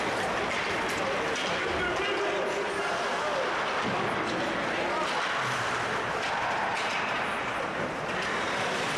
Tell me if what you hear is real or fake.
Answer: real